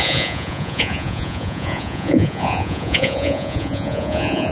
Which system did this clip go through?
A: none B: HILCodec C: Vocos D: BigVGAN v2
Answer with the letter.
C